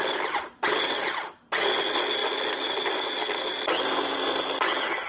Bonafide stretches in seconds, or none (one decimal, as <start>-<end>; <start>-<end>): 0.0-5.1